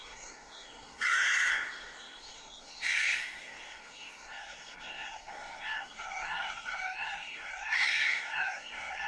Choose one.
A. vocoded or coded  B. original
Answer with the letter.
A